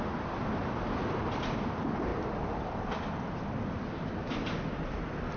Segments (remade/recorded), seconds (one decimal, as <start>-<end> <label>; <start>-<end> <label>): 0.0-5.4 remade